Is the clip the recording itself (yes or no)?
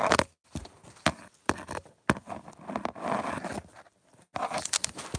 yes